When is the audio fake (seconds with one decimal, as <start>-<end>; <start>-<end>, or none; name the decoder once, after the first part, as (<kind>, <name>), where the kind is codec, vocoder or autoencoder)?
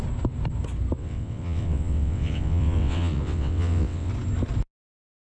1.0-4.1 (vocoder, WaveNeXt)